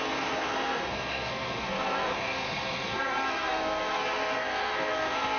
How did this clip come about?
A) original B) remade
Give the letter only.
B